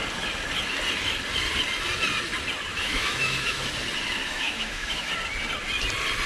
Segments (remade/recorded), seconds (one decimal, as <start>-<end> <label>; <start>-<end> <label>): 0.0-2.7 recorded; 2.7-3.7 remade; 3.7-4.2 recorded; 4.2-5.1 remade; 5.1-6.3 recorded